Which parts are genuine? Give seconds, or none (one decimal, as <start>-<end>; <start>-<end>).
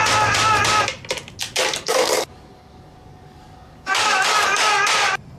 0.0-1.6; 4.8-5.4